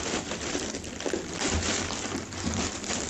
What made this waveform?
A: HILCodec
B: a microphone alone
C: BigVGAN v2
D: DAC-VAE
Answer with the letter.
C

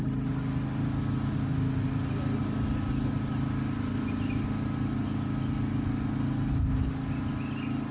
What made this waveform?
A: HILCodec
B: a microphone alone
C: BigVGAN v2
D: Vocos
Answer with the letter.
B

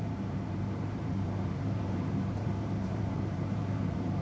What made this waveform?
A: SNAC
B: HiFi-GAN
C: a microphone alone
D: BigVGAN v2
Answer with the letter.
D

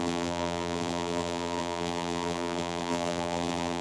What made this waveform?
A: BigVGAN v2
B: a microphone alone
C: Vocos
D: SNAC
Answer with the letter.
A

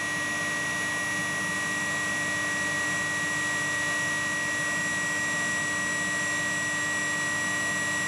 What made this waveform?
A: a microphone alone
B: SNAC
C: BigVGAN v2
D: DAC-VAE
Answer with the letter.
A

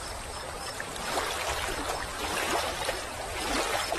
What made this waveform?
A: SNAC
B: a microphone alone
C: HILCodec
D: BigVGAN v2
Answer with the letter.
D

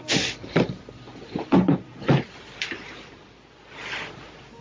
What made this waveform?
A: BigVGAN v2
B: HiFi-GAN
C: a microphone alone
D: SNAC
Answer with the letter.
A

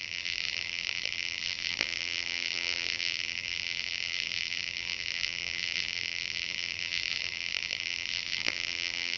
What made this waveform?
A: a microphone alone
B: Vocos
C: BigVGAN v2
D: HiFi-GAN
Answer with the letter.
C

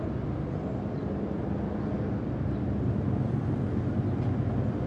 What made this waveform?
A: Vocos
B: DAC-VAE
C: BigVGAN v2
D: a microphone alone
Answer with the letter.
D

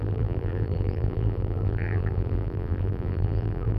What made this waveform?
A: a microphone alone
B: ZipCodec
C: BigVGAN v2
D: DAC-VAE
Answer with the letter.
C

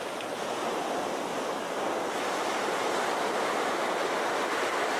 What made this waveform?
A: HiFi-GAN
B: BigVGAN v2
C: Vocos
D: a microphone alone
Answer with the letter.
D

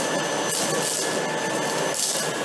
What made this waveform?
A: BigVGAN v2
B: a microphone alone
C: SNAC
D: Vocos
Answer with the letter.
B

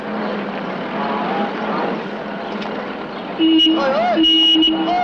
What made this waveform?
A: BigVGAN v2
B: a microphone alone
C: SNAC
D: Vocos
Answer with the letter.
B